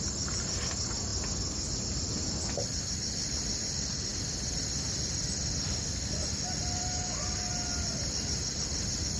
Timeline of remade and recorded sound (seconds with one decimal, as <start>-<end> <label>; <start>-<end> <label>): 0.0-9.2 recorded